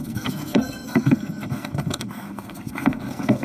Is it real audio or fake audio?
fake